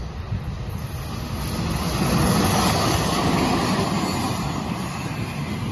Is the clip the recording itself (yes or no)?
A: yes